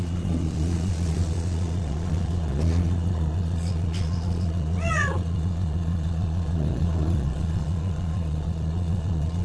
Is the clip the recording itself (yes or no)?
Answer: no